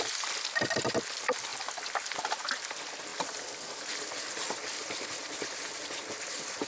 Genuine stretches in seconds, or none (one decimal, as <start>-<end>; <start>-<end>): 0.0-6.7

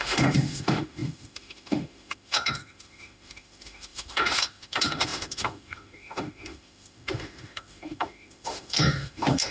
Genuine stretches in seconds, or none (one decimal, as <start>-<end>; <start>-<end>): none

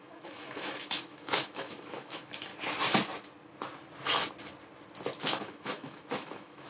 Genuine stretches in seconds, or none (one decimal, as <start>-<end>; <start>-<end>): 2.5-5.2